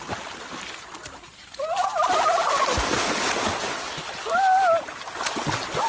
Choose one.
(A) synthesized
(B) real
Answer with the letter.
B